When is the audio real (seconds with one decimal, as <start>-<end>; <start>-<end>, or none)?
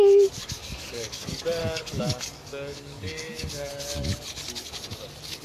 0.0-0.4; 1.2-1.6; 3.7-5.4